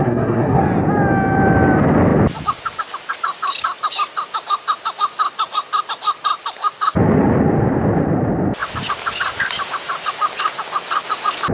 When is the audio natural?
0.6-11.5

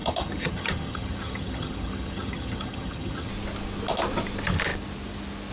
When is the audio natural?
3.3-5.5

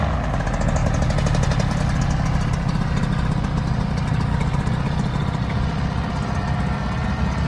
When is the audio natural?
0.0-7.5

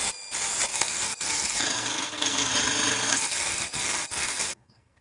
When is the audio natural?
0.0-0.7; 2.5-3.1

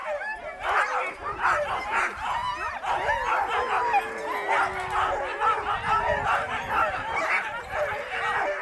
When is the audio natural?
2.4-5.7

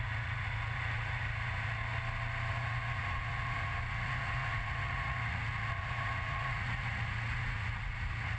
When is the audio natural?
1.8-2.5

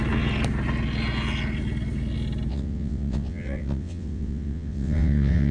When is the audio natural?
0.0-2.5